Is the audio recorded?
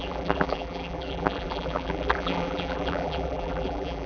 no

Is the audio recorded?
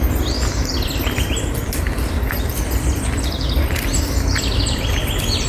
no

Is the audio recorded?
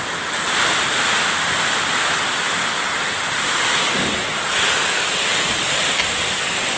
yes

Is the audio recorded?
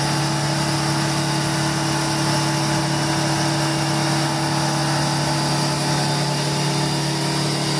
yes